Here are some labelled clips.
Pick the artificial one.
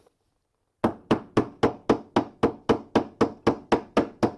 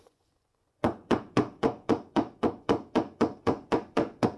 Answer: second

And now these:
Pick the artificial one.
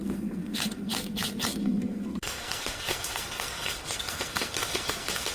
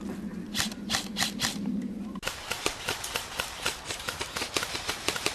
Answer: first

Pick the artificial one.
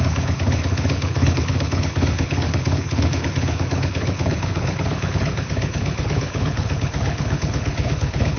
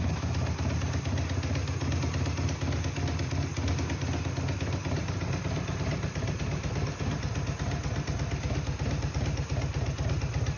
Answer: first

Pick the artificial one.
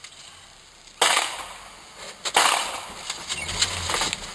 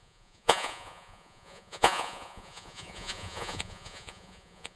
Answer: second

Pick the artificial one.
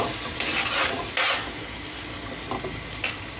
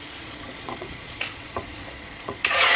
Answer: second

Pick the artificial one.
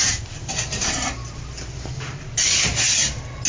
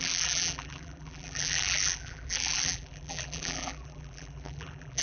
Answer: second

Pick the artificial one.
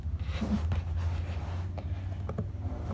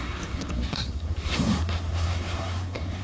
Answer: second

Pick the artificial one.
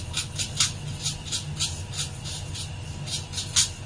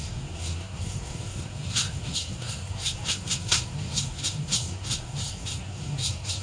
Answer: second